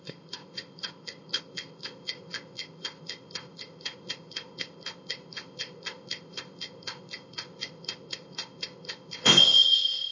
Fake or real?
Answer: fake